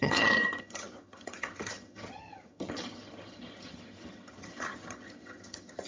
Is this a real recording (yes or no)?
no